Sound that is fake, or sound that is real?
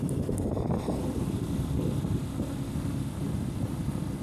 real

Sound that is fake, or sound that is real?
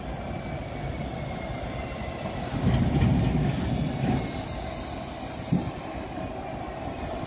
real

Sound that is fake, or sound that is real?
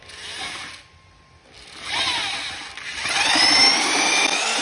real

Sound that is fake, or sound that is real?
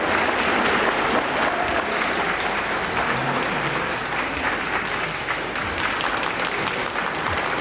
real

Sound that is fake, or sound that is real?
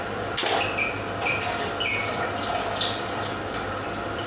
real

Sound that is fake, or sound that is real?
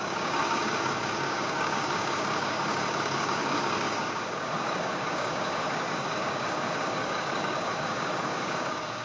fake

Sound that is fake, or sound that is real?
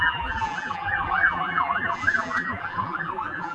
fake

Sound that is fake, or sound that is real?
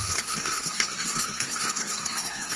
fake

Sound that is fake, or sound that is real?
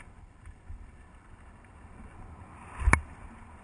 real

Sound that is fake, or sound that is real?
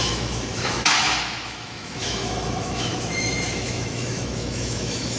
fake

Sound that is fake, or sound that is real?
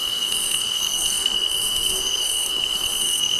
fake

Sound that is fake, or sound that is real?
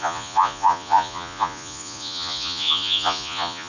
fake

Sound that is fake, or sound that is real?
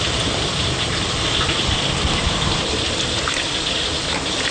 fake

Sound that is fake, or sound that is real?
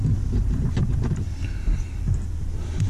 real